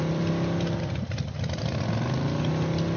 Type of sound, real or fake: real